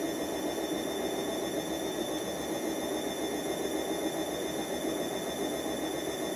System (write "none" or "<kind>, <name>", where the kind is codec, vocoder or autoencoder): none